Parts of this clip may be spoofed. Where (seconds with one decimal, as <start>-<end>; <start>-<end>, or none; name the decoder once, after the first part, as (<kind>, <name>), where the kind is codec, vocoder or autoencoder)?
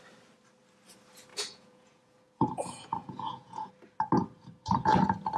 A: 1.3-3.7 (vocoder, Vocos)